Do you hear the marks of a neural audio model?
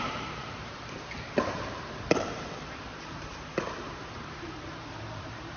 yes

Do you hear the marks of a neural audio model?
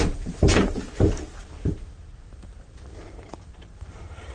yes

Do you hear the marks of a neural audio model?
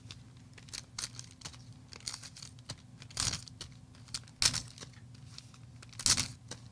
no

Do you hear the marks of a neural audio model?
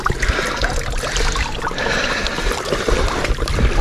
no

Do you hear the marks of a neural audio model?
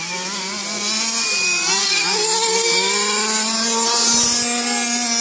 no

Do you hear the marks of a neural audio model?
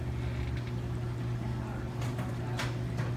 no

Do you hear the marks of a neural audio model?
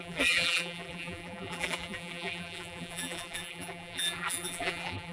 yes